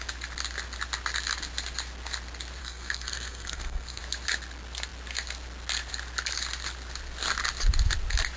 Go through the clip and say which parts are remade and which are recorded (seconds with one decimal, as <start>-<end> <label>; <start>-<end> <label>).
0.0-2.6 recorded; 2.6-4.0 remade; 4.0-8.4 recorded